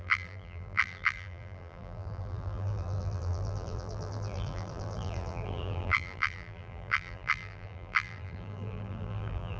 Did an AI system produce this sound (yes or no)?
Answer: yes